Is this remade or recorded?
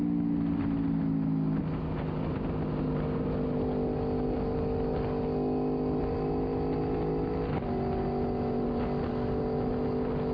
recorded